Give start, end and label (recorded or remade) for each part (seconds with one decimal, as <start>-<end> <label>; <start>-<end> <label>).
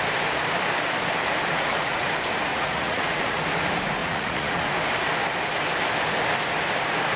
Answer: 0.0-1.5 recorded; 1.5-2.1 remade; 2.1-2.5 recorded; 2.5-3.4 remade; 3.4-4.0 recorded; 4.0-4.7 remade; 4.7-7.2 recorded